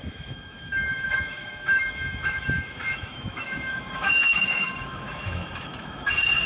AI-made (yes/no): yes